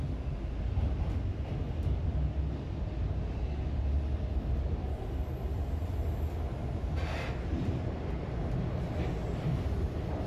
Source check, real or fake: real